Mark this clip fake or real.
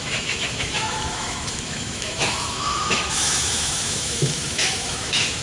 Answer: fake